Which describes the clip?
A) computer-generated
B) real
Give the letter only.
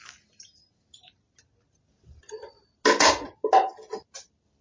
B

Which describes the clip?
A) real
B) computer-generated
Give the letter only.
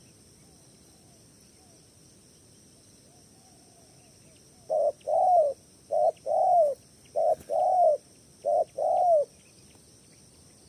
A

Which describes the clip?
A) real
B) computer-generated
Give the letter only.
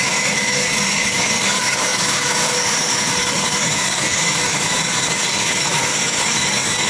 B